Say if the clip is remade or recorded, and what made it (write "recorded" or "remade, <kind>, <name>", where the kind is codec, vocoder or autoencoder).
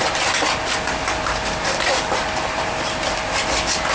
recorded